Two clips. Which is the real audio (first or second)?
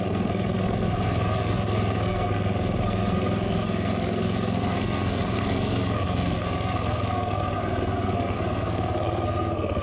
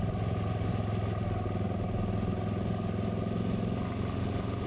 second